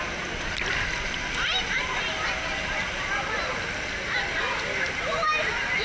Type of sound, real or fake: real